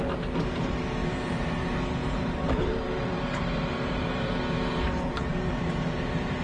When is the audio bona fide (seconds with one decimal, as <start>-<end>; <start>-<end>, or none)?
0.0-1.0; 4.3-5.3